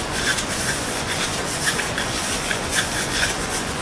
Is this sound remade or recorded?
remade